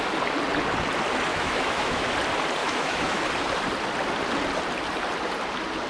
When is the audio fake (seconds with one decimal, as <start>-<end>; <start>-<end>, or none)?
1.3-2.1; 2.6-3.2